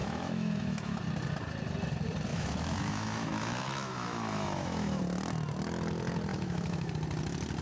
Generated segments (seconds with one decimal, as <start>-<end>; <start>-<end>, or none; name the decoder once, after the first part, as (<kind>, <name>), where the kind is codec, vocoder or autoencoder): 0.0-1.0 (autoencoder, DAC-VAE); 2.3-5.0; 6.3-6.9